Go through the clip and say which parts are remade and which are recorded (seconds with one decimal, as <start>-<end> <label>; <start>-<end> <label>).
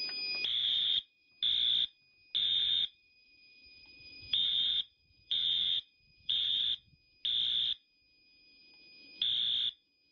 0.0-0.6 recorded; 0.6-1.3 remade; 1.3-2.4 recorded; 2.4-6.6 remade; 6.6-10.1 recorded